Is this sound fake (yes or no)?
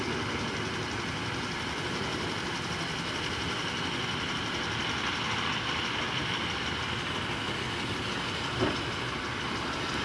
no